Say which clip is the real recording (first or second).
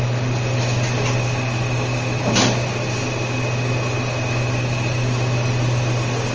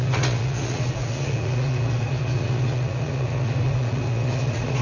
first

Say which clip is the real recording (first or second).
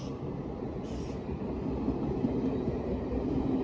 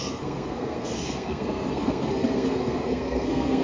first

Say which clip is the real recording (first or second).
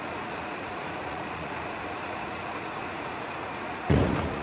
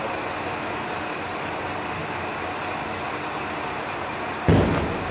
second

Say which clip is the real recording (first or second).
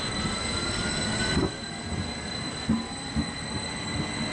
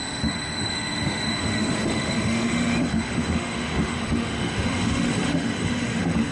first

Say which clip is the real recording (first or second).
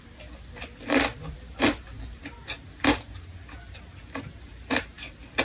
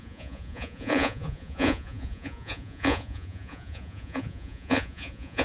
first